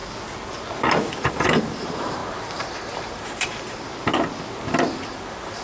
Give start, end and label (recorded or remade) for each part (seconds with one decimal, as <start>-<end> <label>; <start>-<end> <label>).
0.0-1.1 recorded; 1.1-3.9 remade; 3.9-5.0 recorded; 5.0-5.6 remade